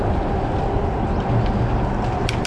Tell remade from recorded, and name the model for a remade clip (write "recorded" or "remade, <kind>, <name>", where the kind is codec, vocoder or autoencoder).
recorded